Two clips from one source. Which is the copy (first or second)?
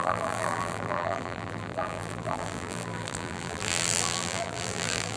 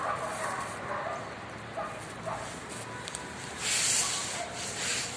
first